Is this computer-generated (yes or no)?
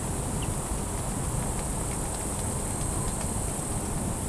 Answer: no